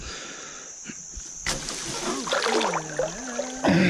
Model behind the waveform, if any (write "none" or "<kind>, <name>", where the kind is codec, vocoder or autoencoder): none